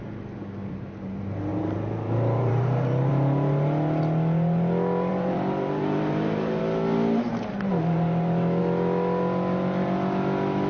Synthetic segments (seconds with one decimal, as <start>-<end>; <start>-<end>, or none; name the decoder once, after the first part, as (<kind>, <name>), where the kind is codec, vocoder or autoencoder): 1.5-3.1 (vocoder, BigVGAN v2); 5.1-6.6